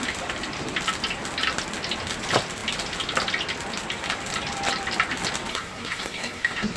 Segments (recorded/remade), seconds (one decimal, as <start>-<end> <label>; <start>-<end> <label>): 0.0-5.5 recorded; 5.5-6.8 remade